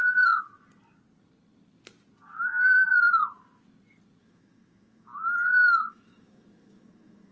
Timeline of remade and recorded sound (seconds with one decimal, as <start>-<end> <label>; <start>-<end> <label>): 0.0-4.2 recorded; 4.2-5.1 remade; 5.1-5.9 recorded; 5.9-7.3 remade